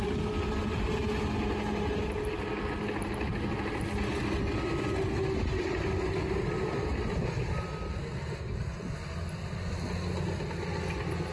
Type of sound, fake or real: real